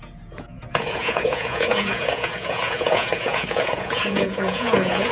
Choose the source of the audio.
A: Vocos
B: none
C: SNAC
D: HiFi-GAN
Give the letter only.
A